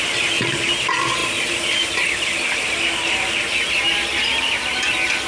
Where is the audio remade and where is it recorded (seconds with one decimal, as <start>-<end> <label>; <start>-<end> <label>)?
0.0-5.3 recorded